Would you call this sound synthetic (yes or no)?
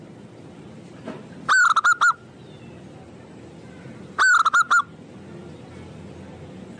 no